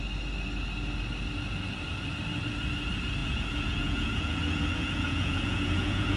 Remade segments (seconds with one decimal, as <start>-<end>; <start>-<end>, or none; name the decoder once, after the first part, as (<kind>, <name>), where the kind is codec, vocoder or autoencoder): 3.2-6.2 (vocoder, Vocos)